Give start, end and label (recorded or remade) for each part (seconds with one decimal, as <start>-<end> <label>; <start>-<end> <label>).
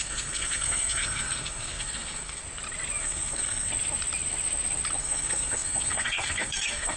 0.0-2.4 remade; 2.4-3.0 recorded; 3.0-3.7 remade; 3.7-5.0 recorded; 5.0-7.0 remade